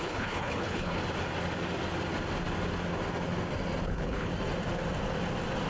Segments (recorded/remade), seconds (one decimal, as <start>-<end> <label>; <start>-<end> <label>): 0.0-1.0 remade; 1.0-3.8 recorded; 3.8-4.3 remade; 4.3-5.7 recorded